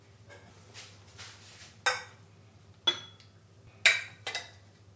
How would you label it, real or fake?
real